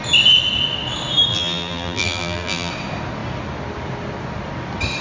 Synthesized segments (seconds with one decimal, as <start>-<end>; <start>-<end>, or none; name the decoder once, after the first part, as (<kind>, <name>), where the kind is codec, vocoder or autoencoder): 1.3-2.7 (vocoder, BigVGAN v2)